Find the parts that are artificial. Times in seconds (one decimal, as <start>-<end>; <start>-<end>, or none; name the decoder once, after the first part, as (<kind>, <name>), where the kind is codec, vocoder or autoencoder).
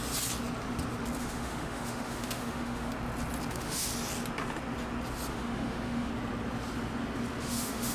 1.2-2.9 (autoencoder, DAC-VAE); 3.5-3.9; 5.3-6.1; 7.4-7.9